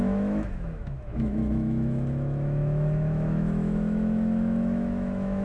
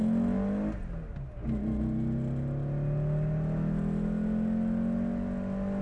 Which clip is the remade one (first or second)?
first